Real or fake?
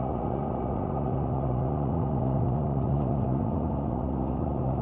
fake